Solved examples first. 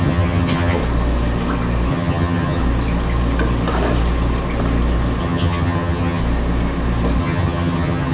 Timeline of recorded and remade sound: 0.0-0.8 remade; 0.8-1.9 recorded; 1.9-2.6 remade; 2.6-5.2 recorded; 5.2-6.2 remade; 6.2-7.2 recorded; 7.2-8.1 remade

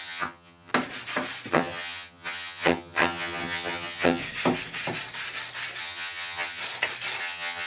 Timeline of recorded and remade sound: 0.0-0.7 remade; 0.7-1.5 recorded; 1.5-4.2 remade; 4.2-5.8 recorded; 5.8-6.6 remade; 6.6-7.2 recorded; 7.2-7.7 remade

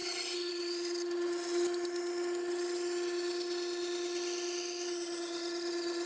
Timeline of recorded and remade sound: 0.0-6.1 recorded

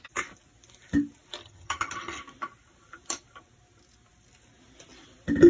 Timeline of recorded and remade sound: 0.0-1.4 recorded; 1.4-2.2 remade; 2.2-5.5 recorded